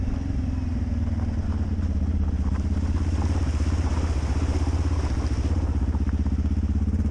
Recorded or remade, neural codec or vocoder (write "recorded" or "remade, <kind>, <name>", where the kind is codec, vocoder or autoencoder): recorded